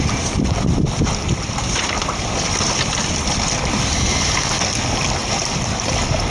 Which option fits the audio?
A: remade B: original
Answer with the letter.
B